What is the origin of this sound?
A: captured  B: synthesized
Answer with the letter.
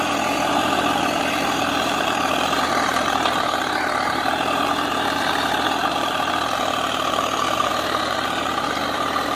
B